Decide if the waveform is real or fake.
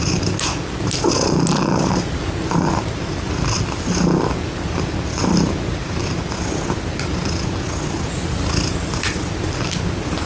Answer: real